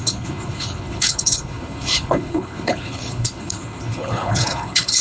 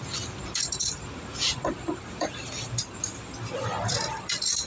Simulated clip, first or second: first